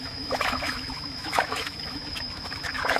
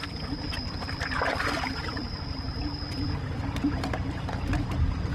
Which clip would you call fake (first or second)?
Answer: first